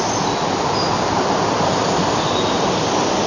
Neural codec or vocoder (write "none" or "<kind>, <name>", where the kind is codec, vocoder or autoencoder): none